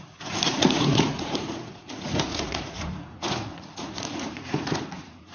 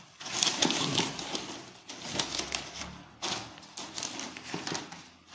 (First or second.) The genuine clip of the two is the second